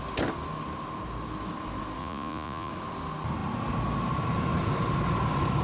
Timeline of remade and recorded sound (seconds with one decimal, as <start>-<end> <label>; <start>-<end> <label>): 0.0-2.0 recorded; 2.0-2.7 remade; 2.7-5.6 recorded